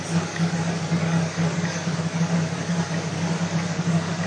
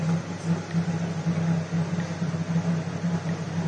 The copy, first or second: first